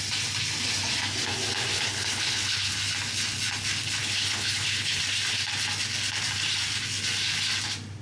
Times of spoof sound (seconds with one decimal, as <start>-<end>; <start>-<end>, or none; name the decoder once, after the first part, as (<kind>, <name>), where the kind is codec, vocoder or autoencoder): 1.7-2.7 (codec, HILCodec); 4.0-5.0